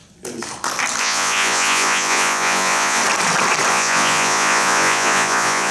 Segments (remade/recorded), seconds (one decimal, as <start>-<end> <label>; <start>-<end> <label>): 0.0-1.0 recorded; 1.0-3.0 remade; 3.0-3.7 recorded; 3.7-5.7 remade